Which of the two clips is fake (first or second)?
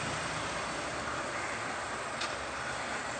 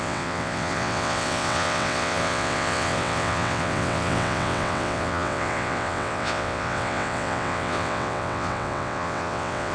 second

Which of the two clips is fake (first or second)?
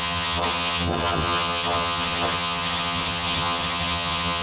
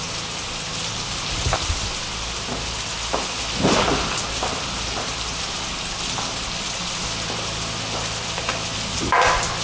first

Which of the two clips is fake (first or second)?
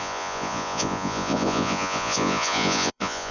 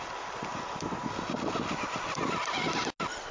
first